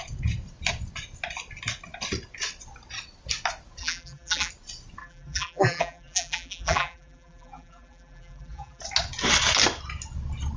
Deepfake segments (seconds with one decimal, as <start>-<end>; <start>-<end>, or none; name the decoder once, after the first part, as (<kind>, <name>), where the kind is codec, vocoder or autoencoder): 3.8-4.5 (vocoder, BigVGAN v2); 5.0-8.8

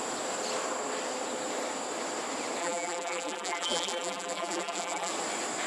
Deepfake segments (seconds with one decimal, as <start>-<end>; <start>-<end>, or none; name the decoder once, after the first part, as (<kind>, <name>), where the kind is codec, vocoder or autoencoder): 2.6-5.1 (vocoder, BigVGAN v2)

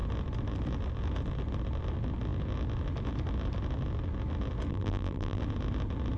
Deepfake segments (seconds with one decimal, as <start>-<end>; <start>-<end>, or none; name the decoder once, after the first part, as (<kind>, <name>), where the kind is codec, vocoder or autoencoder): 4.7-5.4 (vocoder, BigVGAN v2)

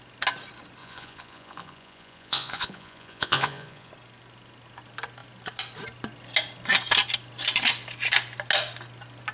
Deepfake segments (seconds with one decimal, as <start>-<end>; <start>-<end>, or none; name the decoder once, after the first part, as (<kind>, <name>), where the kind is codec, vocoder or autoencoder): 0.8-3.9 (vocoder, Vocos)

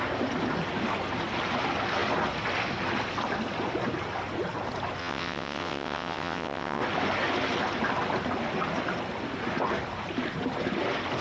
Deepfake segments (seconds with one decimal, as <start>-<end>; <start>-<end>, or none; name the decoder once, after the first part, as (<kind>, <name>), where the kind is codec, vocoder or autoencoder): 5.0-6.8 (vocoder, WaveNeXt)

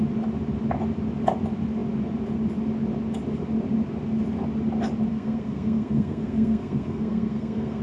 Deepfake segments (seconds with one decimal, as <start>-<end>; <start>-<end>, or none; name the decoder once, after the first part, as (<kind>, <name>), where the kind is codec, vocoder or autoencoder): 5.1-7.8 (codec, SNAC)

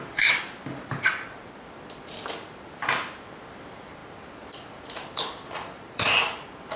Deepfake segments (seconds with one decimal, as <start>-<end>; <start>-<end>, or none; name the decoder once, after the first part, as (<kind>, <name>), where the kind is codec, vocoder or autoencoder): none